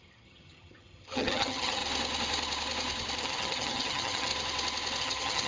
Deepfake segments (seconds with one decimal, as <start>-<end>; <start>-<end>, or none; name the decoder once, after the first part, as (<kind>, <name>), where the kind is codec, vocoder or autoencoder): 0.0-1.8 (vocoder, HiFi-GAN); 3.2-4.3; 5.0-5.5